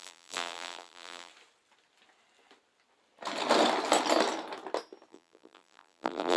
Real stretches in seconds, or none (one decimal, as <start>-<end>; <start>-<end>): 1.3-5.1